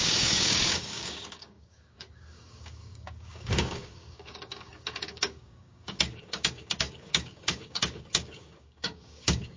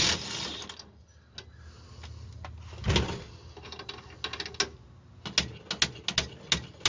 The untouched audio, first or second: second